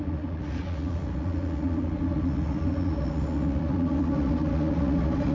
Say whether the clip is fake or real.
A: fake